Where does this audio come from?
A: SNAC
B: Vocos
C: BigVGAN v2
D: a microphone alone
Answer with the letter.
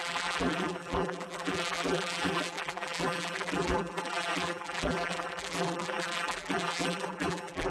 C